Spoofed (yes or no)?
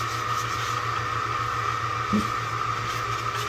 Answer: no